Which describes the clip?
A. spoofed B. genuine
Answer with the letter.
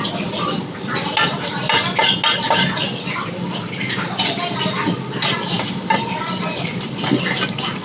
B